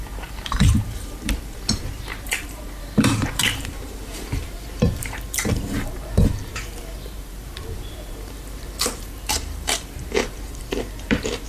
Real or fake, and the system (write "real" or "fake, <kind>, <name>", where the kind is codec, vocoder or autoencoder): fake, vocoder, BigVGAN v2